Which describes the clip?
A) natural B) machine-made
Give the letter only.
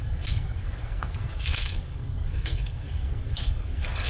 B